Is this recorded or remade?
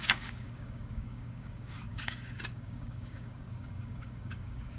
remade